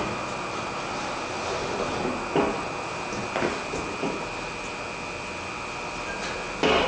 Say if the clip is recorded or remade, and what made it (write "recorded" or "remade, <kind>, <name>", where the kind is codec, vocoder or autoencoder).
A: recorded